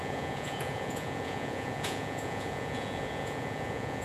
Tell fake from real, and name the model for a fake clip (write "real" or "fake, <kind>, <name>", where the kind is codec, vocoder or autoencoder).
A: fake, vocoder, Vocos